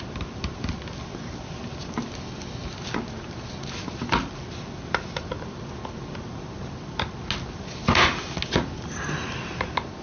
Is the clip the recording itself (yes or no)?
yes